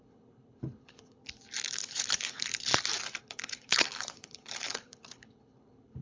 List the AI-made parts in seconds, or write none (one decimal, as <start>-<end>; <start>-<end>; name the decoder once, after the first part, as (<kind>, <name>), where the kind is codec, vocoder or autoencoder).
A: 0.0-1.2 (codec, HILCodec); 1.7-2.7; 3.2-6.0